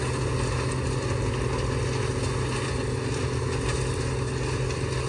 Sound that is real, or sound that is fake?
real